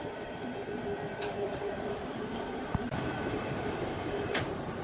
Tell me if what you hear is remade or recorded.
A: remade